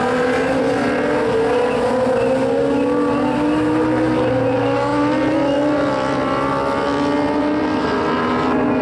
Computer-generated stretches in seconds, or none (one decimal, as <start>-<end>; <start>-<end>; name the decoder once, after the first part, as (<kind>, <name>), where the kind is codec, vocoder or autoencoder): none